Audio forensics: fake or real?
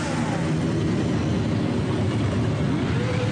real